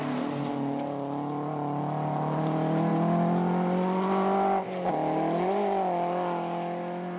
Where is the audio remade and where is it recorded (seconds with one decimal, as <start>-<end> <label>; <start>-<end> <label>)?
0.0-7.2 recorded